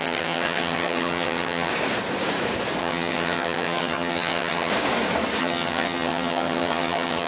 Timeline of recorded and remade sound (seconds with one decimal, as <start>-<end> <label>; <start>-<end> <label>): 0.0-1.7 remade; 1.7-2.8 recorded; 2.8-4.7 remade; 4.7-5.4 recorded; 5.4-7.3 remade